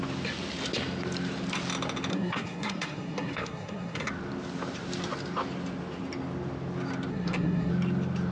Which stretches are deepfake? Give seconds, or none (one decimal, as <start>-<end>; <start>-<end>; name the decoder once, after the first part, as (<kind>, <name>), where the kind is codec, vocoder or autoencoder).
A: 2.1-4.1 (codec, SNAC); 7.1-7.7